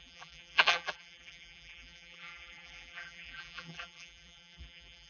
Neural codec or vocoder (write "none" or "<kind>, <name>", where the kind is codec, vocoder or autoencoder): vocoder, BigVGAN v2